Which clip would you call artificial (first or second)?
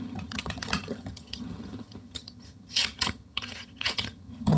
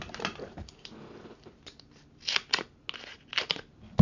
first